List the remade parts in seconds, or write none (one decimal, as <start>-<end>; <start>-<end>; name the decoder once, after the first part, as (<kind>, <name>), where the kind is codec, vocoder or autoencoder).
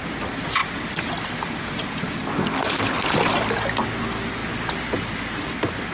none